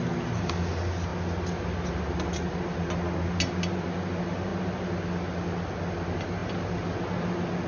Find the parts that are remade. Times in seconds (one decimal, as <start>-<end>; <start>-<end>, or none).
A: none